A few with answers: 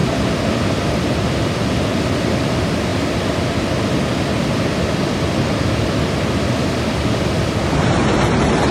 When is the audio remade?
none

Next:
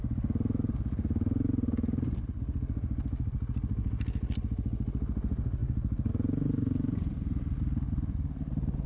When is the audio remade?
none

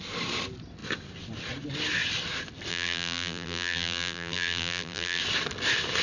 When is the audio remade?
2.7-5.2 (vocoder, BigVGAN v2)

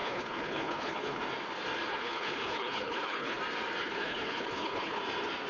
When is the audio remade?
0.0-1.2 (codec, HILCodec); 1.9-3.4; 3.8-5.0

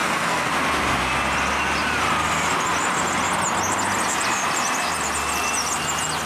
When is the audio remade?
0.0-0.5 (codec, SNAC)